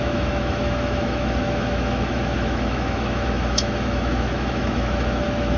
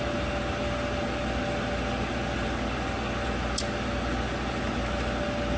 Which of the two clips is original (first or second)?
second